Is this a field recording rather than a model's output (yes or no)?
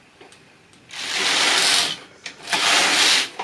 yes